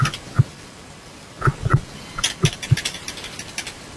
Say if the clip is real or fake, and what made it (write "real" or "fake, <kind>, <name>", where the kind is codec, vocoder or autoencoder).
real